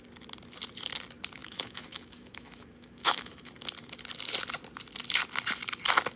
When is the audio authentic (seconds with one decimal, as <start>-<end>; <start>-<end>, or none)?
0.0-1.4; 3.5-6.2